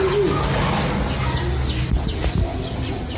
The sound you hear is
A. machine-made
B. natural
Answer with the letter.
B